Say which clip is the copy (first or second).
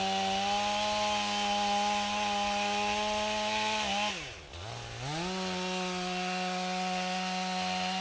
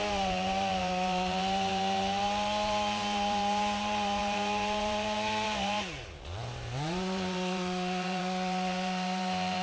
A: second